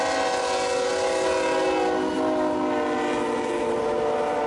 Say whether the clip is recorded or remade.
recorded